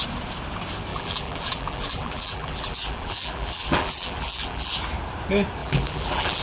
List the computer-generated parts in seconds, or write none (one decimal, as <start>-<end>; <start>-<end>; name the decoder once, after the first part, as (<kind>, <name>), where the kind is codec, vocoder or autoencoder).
0.9-4.7 (vocoder, BigVGAN v2); 5.6-6.4

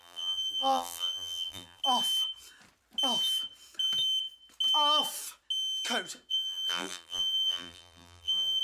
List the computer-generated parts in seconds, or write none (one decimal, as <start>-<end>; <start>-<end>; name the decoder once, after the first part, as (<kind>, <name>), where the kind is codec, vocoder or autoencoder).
0.0-1.8 (vocoder, BigVGAN v2); 6.3-8.6